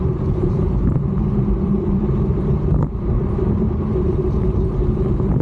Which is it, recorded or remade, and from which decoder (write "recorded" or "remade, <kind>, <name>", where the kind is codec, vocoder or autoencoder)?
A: remade, vocoder, BigVGAN v2